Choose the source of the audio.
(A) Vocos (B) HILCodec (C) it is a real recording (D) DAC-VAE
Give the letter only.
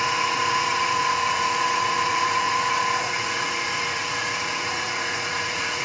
A